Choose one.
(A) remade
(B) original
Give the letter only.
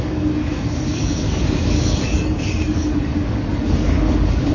A